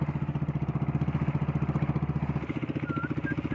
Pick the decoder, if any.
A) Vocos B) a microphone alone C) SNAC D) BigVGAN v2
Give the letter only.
B